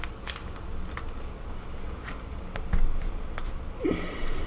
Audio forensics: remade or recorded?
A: recorded